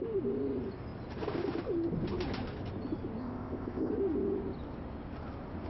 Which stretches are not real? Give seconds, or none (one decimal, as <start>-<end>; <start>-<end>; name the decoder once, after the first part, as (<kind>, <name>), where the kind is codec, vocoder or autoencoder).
3.2-3.9 (codec, ZipCodec)